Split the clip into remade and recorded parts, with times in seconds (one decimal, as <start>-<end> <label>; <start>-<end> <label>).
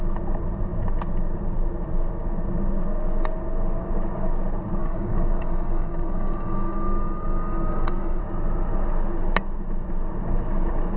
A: 0.0-4.8 recorded; 4.8-8.2 remade; 8.2-11.0 recorded